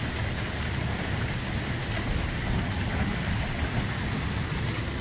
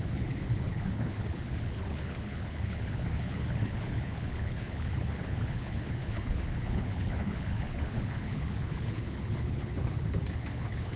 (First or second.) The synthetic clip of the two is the second